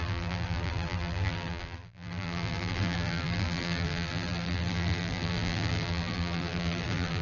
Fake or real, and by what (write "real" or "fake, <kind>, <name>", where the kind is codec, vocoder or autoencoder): fake, vocoder, BigVGAN v2